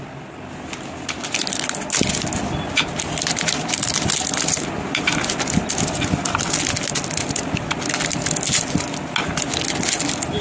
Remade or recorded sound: recorded